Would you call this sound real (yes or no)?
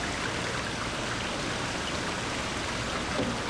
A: yes